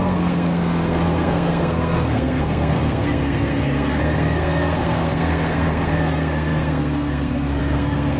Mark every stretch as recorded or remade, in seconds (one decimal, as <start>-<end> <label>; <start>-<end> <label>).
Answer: 0.0-8.2 remade